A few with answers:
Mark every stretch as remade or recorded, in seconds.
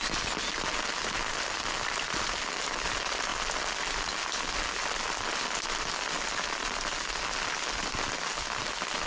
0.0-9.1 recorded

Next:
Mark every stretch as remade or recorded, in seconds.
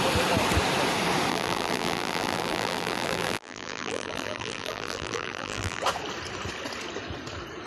0.0-1.3 recorded; 1.3-5.8 remade; 5.8-7.7 recorded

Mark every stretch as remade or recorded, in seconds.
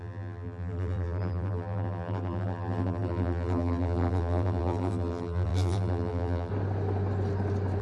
0.0-6.5 remade; 6.5-7.8 recorded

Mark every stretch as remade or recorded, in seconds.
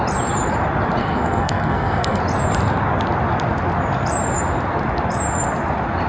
0.0-1.0 recorded; 1.0-2.2 remade; 2.2-6.1 recorded